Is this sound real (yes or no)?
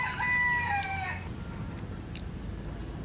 yes